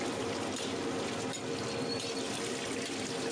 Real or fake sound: real